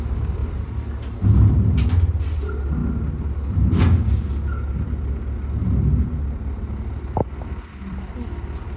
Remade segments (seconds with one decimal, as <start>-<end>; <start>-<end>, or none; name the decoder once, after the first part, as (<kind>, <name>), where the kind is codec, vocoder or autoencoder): 0.0-0.4 (vocoder, BigVGAN v2); 1.5-2.8; 7.4-8.8

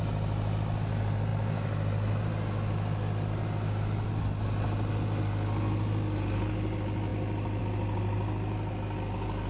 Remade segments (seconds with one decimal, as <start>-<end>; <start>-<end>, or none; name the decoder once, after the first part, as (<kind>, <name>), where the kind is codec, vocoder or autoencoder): 7.1-7.6 (vocoder, BigVGAN v2)

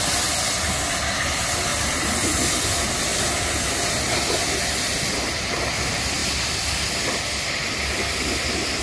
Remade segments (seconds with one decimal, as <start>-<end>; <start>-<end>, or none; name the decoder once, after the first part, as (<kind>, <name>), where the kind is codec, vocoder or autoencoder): 1.7-2.5 (vocoder, BigVGAN v2)

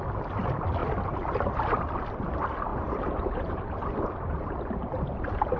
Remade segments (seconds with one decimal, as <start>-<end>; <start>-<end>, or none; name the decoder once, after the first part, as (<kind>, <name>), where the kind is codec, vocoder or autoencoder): 0.8-1.8 (vocoder, BigVGAN v2); 2.7-5.6